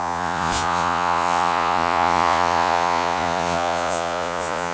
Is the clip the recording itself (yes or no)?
no